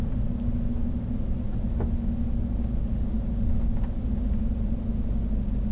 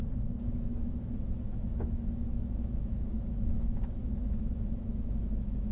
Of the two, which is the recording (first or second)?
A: first